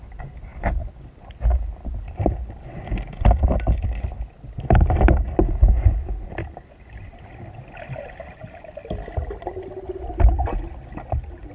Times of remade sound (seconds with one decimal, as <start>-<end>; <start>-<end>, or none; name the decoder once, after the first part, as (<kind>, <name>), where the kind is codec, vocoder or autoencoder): none